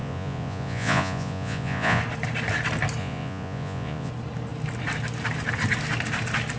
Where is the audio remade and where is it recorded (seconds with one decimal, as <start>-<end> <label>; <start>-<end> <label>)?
0.0-2.0 remade; 2.0-3.0 recorded; 3.0-4.1 remade; 4.1-6.6 recorded